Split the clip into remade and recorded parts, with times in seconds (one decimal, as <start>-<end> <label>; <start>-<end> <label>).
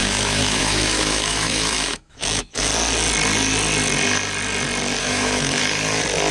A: 0.0-2.7 remade; 2.7-5.0 recorded; 5.0-5.6 remade; 5.6-6.3 recorded